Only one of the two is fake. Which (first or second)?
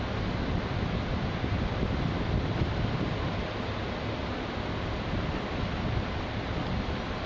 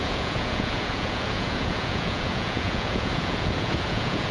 second